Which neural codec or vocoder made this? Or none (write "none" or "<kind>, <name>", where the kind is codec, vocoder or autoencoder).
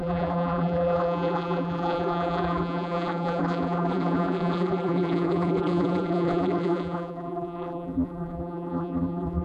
vocoder, BigVGAN v2